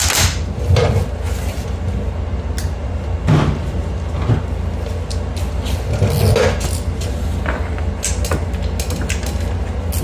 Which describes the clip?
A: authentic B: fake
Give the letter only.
A